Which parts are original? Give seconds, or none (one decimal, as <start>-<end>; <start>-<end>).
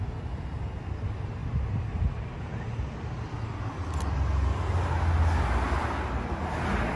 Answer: 0.0-7.0